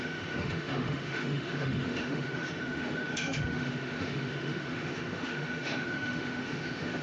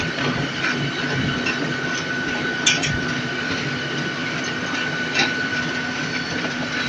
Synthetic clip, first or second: first